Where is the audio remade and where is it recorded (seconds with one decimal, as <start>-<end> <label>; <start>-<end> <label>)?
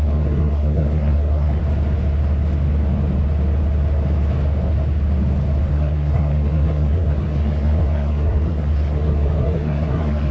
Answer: 0.0-1.6 remade; 1.6-5.7 recorded; 5.7-10.3 remade